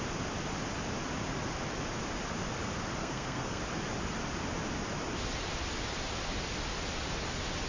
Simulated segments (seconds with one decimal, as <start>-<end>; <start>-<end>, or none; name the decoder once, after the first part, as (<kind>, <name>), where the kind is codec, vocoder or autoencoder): 3.0-3.6 (codec, SNAC)

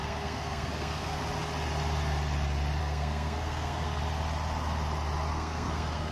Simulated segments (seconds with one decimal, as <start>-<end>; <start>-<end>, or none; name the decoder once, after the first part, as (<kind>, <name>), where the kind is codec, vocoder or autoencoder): 0.0-1.2 (codec, SNAC); 2.8-4.0; 5.3-6.1

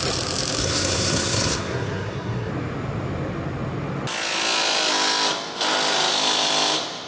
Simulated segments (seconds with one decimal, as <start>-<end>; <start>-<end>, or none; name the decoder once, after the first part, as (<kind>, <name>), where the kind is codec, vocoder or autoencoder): 0.6-2.5 (codec, SNAC)

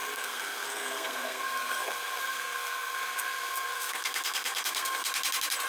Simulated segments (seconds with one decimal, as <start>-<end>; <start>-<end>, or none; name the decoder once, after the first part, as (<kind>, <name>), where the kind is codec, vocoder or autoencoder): 0.0-5.1 (codec, SNAC)

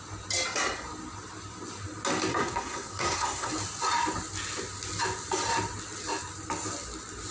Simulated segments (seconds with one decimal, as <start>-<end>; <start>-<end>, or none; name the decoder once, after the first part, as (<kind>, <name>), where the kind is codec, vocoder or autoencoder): 2.3-3.5 (codec, SNAC)